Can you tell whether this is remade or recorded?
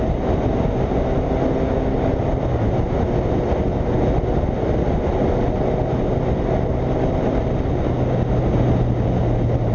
recorded